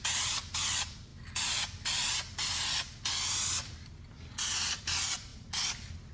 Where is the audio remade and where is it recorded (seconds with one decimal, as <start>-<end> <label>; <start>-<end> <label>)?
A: 0.0-1.1 remade; 1.1-4.8 recorded; 4.8-5.3 remade; 5.3-6.1 recorded